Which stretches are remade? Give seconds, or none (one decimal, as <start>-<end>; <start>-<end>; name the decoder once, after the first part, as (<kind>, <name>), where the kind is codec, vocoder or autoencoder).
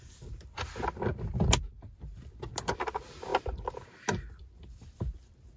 none